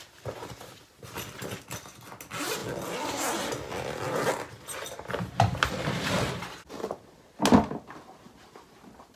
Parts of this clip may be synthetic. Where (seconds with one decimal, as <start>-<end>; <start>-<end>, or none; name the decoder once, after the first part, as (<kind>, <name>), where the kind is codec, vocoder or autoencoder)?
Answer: none